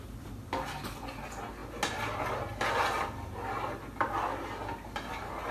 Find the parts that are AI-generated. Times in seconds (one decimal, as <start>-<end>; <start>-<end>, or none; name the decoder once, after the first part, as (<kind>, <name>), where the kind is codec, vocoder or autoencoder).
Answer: none